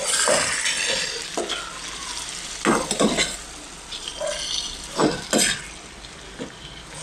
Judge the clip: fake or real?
real